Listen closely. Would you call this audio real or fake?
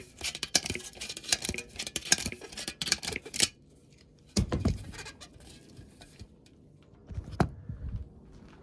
fake